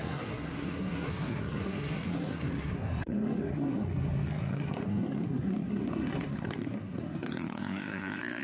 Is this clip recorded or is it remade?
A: remade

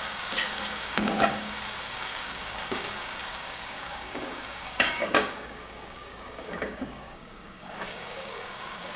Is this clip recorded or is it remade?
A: remade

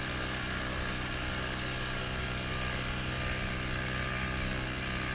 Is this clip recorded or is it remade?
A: recorded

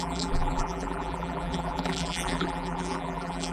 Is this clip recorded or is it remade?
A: remade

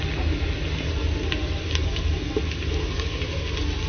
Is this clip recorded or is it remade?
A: recorded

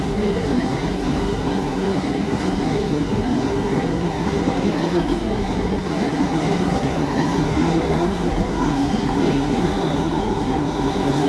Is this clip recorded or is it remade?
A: remade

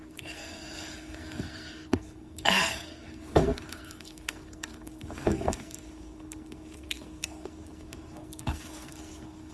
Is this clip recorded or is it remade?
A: remade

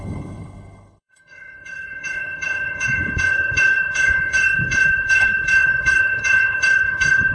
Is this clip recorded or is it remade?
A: remade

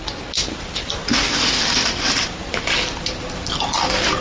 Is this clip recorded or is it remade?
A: recorded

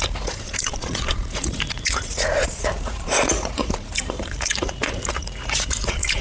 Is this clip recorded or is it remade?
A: remade